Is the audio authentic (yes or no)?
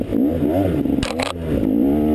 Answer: yes